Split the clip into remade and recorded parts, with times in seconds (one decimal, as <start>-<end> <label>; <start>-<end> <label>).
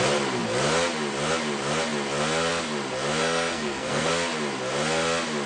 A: 0.0-3.2 recorded; 3.2-4.1 remade; 4.1-5.5 recorded